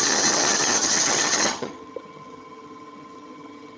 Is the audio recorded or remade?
remade